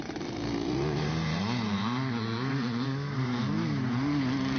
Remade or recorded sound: remade